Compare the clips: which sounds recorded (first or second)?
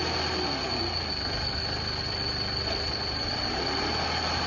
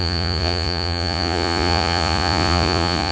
first